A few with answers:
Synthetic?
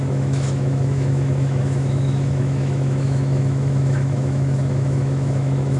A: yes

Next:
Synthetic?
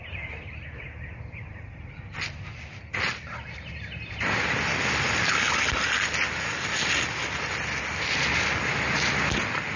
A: no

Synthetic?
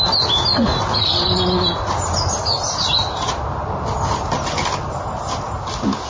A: no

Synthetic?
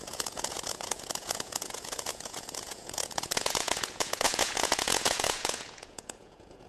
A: yes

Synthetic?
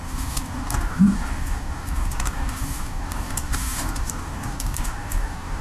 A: yes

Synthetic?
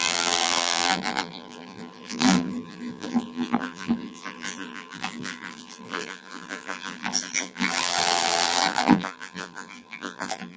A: yes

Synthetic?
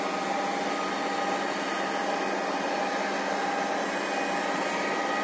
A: no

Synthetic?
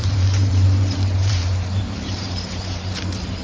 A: yes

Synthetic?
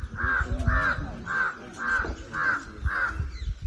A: no